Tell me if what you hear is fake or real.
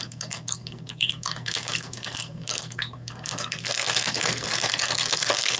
fake